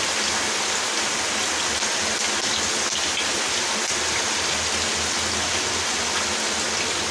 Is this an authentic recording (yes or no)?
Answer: yes